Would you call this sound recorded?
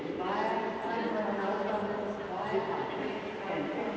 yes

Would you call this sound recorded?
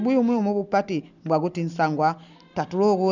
yes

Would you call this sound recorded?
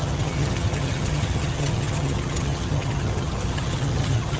no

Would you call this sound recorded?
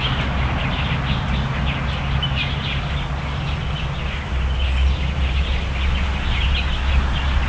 yes